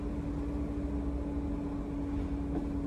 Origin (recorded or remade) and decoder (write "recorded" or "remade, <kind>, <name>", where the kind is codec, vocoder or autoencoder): recorded